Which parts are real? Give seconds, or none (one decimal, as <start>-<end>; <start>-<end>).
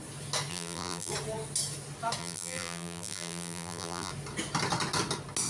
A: 0.0-0.5; 1.1-2.2; 4.1-5.5